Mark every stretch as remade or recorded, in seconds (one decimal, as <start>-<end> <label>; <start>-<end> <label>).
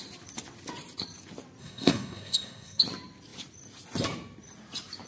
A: 0.0-1.6 recorded; 1.6-2.8 remade; 2.8-5.1 recorded